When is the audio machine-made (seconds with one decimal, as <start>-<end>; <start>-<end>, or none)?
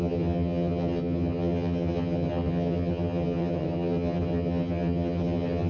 0.0-5.7